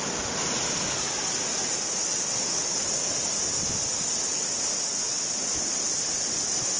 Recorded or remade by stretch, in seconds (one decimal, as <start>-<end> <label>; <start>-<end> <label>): 0.0-6.8 recorded